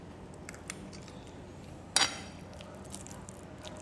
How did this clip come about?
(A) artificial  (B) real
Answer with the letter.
B